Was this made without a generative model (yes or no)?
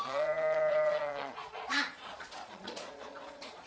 no